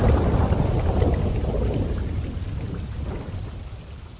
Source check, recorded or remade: recorded